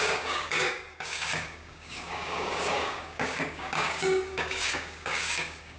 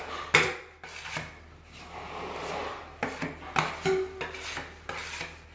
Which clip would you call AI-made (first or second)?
first